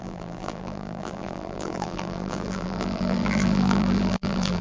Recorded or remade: remade